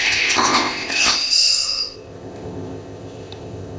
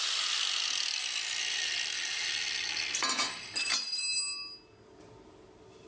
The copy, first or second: first